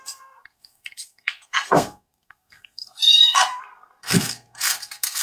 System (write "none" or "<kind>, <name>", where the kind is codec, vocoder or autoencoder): codec, SNAC